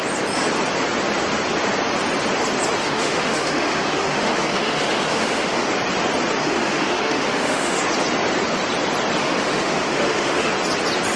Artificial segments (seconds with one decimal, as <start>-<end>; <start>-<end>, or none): 2.8-5.7; 6.4-7.8; 9.2-10.5